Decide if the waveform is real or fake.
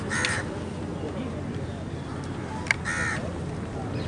real